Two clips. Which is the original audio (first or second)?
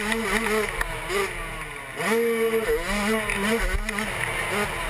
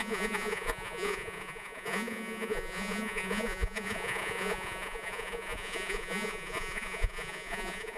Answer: first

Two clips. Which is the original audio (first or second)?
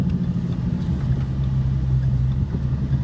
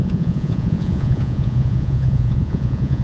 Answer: first